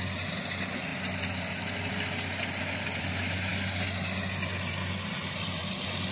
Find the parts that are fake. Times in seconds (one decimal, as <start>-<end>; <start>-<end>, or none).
none